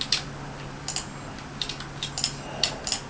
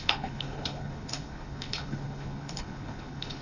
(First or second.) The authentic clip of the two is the first